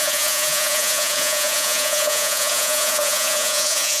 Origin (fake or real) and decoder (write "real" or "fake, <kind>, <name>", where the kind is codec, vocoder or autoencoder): fake, vocoder, Vocos